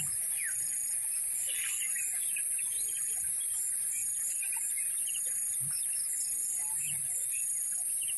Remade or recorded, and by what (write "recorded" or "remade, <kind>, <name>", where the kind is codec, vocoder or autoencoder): recorded